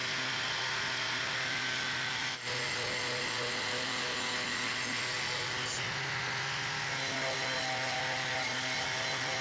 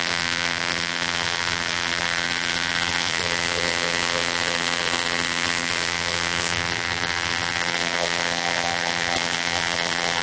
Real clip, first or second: first